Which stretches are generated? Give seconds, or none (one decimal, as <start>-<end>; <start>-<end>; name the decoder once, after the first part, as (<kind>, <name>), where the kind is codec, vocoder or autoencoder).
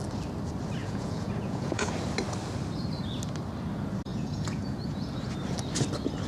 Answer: 0.8-1.9 (vocoder, Vocos); 4.1-5.3